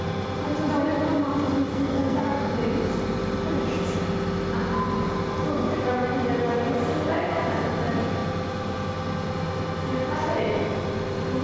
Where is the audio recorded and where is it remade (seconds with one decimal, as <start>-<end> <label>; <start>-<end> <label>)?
0.0-1.7 recorded; 1.7-2.4 remade; 2.4-11.4 recorded